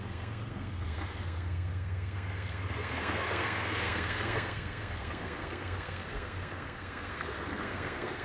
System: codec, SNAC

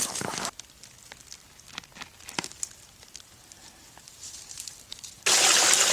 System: none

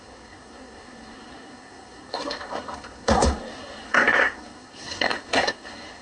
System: codec, SNAC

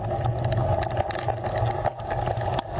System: none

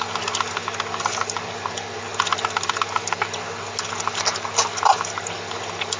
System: none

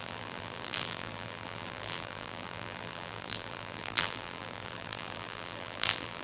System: vocoder, BigVGAN v2